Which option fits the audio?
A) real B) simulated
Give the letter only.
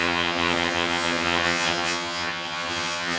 B